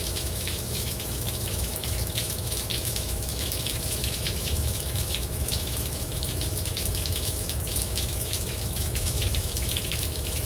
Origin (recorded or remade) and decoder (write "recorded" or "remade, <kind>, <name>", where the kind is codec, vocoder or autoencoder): remade, autoencoder, DAC-VAE